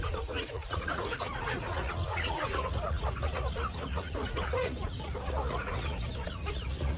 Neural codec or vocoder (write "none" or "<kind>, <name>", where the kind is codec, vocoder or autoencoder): vocoder, Vocos